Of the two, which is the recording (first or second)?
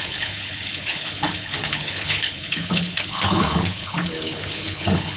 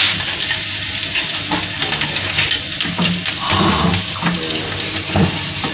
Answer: second